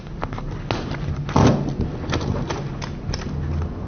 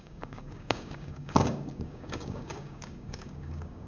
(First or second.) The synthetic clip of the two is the second